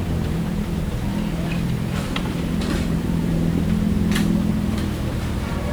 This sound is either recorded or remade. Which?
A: remade